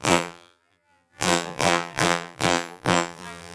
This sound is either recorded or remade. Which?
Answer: remade